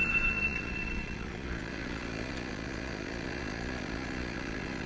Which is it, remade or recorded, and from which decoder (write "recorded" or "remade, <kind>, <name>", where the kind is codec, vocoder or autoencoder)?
remade, vocoder, Vocos